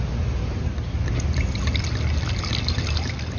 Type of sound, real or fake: real